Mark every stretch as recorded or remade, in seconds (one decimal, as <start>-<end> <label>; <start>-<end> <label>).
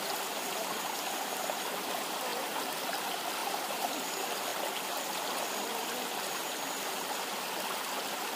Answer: 0.0-3.4 recorded; 3.4-3.9 remade; 3.9-8.4 recorded